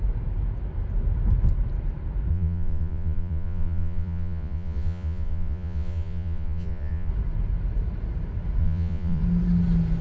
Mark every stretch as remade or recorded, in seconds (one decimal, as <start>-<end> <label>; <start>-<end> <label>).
0.0-2.3 recorded; 2.3-7.1 remade; 7.1-8.6 recorded; 8.6-9.2 remade; 9.2-10.0 recorded